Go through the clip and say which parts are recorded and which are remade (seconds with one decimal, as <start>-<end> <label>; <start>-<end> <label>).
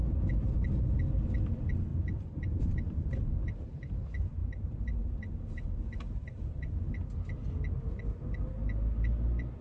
0.0-1.9 recorded; 1.9-3.9 remade; 3.9-4.4 recorded; 4.4-6.7 remade; 6.7-9.6 recorded